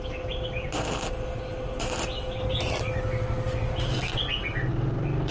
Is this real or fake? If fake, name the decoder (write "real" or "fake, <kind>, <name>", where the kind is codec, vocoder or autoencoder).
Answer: real